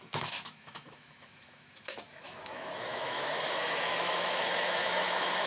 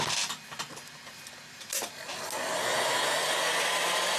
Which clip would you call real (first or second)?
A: second